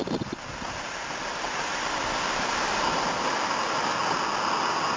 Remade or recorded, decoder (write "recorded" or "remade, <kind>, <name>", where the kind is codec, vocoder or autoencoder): recorded